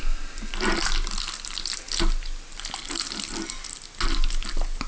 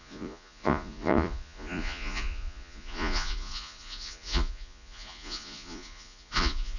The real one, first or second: first